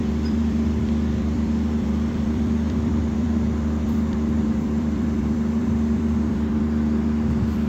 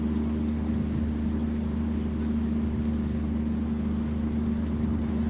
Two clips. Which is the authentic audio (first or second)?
second